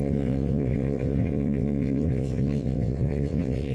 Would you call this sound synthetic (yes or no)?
yes